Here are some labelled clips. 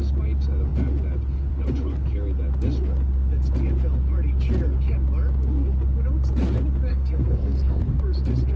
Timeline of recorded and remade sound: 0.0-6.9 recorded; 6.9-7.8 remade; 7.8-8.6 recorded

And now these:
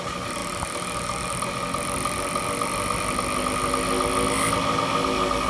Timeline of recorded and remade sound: 0.0-5.5 recorded